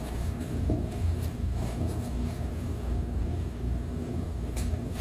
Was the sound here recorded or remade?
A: remade